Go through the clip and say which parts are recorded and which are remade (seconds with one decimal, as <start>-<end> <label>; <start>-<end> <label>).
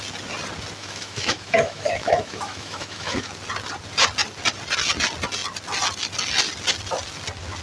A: 0.0-0.8 recorded; 0.8-3.3 remade; 3.3-7.6 recorded